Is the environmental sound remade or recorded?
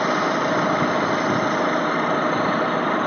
recorded